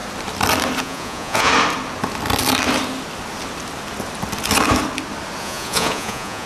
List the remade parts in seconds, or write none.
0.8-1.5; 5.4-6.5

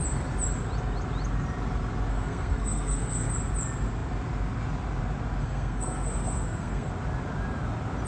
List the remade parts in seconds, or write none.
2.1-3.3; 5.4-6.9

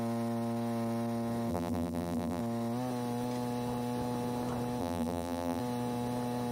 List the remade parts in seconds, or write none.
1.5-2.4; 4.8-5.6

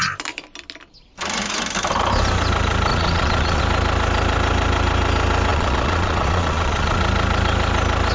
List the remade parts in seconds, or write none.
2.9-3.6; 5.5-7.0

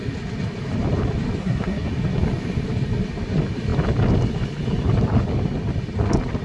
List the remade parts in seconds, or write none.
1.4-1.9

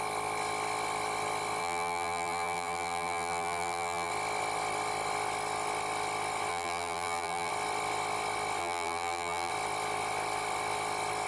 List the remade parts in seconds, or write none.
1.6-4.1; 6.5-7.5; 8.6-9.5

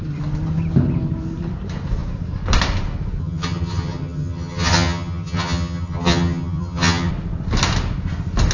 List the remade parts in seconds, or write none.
3.2-7.1